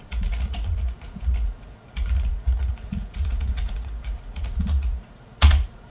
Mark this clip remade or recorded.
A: remade